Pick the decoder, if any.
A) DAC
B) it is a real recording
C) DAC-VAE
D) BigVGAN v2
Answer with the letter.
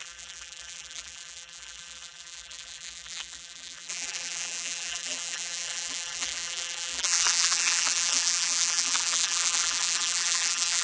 D